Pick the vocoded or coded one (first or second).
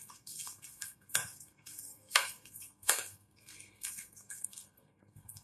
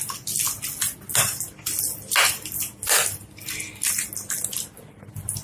first